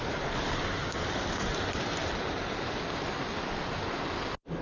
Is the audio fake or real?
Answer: real